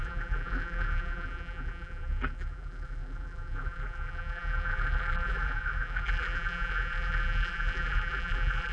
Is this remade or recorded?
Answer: remade